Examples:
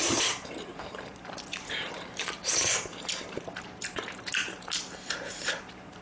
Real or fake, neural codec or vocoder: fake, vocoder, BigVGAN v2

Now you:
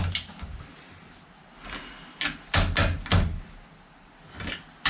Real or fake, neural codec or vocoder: real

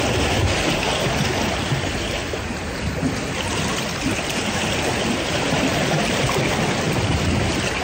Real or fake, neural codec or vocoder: real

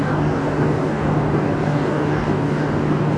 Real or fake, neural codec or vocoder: fake, codec, DAC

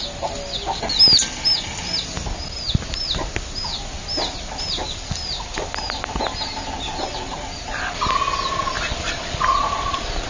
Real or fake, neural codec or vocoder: real